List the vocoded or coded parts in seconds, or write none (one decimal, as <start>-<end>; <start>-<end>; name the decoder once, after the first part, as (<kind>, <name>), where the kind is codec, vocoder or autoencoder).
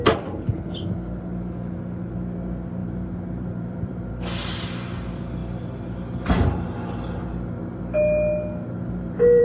2.8-4.1 (vocoder, BigVGAN v2)